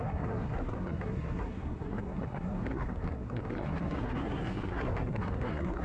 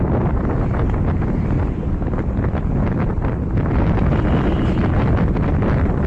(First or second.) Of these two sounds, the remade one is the first